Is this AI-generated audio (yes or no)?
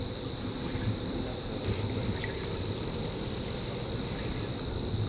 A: no